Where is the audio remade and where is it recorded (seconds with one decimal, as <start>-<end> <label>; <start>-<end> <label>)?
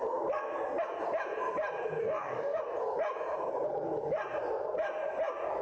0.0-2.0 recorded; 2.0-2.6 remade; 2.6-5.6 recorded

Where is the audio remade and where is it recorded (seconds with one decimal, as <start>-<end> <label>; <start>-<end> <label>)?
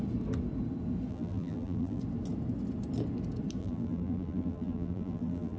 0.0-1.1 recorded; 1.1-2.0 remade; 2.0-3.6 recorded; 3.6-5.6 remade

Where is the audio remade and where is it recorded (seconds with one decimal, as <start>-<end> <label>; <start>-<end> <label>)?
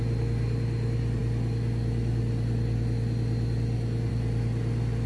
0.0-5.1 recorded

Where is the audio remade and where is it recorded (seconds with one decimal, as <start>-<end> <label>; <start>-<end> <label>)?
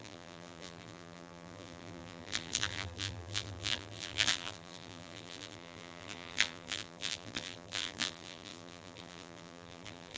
0.0-10.2 remade